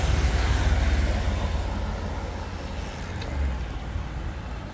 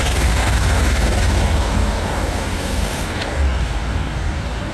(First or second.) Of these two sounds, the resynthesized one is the second